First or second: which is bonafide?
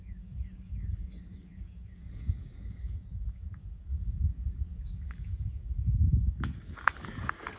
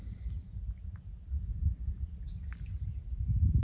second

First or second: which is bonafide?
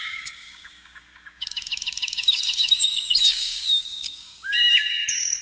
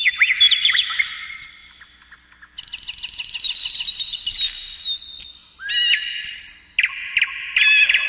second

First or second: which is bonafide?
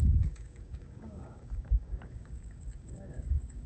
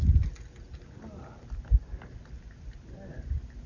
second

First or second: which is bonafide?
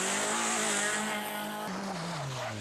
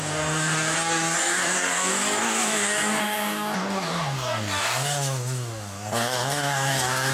first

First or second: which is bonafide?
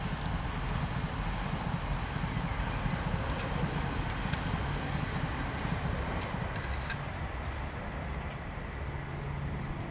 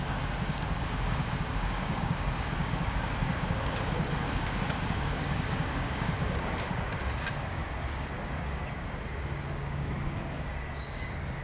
first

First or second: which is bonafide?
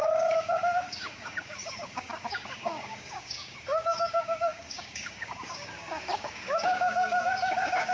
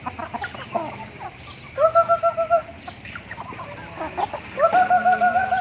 second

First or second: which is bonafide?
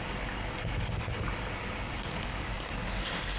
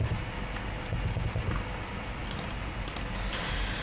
second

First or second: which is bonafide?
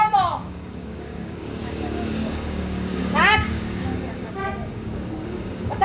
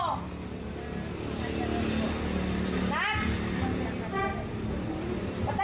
second